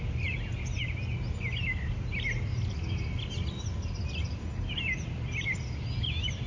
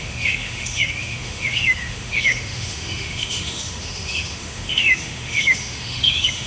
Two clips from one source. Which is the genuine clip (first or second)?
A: first